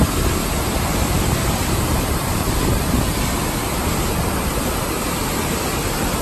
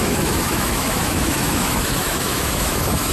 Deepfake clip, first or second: second